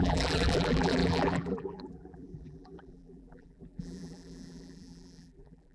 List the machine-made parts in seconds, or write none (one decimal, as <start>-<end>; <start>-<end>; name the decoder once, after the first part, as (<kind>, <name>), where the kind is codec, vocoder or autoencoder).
0.0-5.7 (vocoder, BigVGAN v2)